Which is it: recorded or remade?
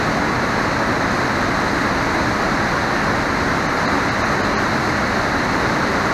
recorded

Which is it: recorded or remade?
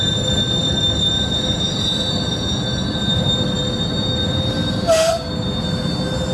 recorded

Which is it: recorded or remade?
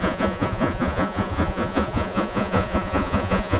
remade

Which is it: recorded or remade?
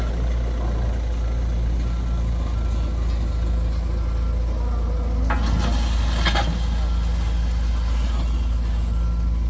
recorded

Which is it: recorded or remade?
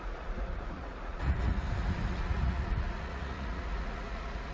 remade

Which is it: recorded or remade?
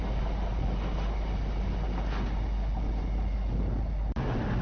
recorded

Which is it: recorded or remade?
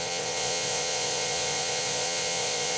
remade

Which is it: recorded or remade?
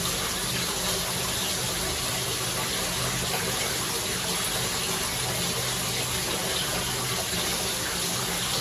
recorded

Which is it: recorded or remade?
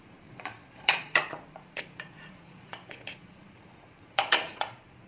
remade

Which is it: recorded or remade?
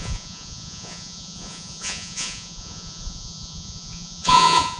remade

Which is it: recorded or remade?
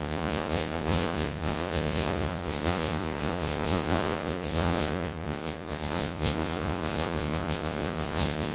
remade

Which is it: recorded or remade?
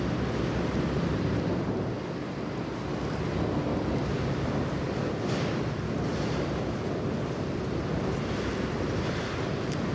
recorded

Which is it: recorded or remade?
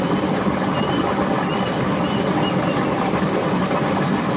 recorded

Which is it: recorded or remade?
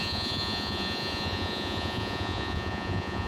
remade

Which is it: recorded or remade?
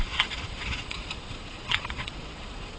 remade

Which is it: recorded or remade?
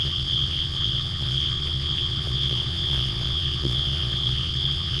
remade